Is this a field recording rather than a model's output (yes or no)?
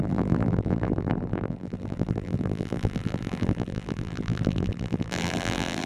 no